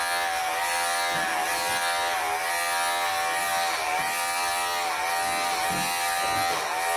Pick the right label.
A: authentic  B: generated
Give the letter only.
A